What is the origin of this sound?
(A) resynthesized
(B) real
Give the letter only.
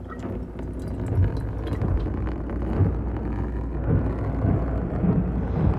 B